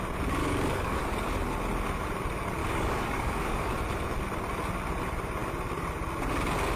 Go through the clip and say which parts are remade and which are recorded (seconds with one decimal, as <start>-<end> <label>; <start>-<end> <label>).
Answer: 0.0-0.4 recorded; 0.4-1.0 remade; 1.0-2.6 recorded; 2.6-3.7 remade; 3.7-6.8 recorded

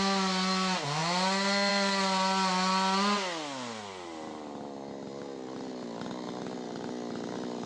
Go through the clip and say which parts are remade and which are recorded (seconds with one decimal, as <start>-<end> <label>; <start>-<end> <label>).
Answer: 0.0-7.7 recorded

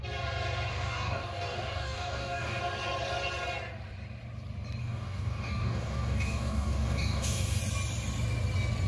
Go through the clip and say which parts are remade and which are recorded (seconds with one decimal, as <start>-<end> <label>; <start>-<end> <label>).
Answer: 0.0-0.7 recorded; 0.7-2.6 remade; 2.6-4.8 recorded; 4.8-7.6 remade; 7.6-8.9 recorded

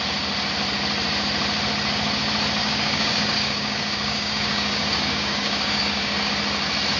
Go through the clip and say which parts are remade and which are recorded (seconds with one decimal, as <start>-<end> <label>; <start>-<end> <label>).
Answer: 0.0-2.6 recorded; 2.6-6.3 remade; 6.3-7.0 recorded

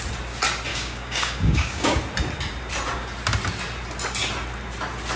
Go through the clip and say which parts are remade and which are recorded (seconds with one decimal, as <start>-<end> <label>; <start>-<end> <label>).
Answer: 0.0-0.7 recorded; 0.7-2.0 remade; 2.0-5.2 recorded